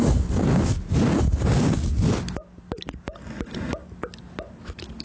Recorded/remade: recorded